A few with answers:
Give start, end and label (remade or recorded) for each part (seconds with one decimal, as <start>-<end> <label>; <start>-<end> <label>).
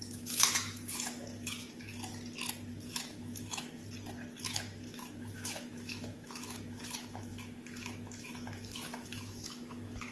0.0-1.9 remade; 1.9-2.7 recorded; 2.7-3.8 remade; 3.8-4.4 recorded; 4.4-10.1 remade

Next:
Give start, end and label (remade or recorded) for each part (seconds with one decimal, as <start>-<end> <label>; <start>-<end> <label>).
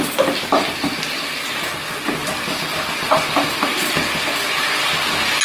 0.0-5.4 recorded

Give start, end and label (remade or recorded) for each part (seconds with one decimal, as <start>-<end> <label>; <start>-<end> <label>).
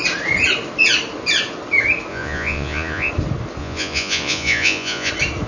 0.0-2.1 recorded; 2.1-3.1 remade; 3.1-3.6 recorded; 3.6-5.1 remade; 5.1-5.5 recorded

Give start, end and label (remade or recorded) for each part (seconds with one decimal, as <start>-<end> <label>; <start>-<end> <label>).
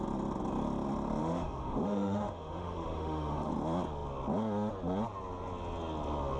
0.0-1.2 recorded; 1.2-3.5 remade; 3.5-6.4 recorded